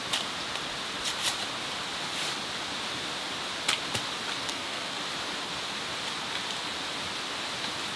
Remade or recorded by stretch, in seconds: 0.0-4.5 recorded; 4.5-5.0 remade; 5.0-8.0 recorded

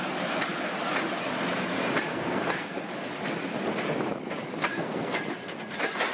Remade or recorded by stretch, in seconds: 0.0-2.1 recorded; 2.1-2.8 remade; 2.8-4.7 recorded; 4.7-5.2 remade; 5.2-6.1 recorded

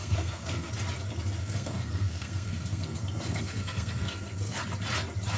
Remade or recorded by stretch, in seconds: 0.0-0.7 remade; 0.7-1.4 recorded; 1.4-4.6 remade; 4.6-5.4 recorded

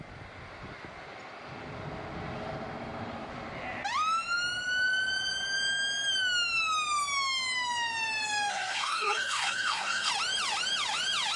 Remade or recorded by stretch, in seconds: 0.0-8.5 recorded; 8.5-10.1 remade; 10.1-11.4 recorded

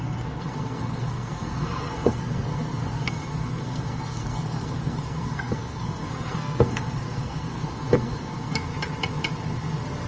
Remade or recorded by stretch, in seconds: 0.0-8.7 remade; 8.7-10.1 recorded